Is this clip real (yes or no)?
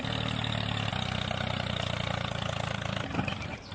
yes